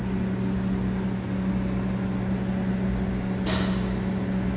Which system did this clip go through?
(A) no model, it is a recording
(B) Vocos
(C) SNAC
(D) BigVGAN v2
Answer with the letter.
A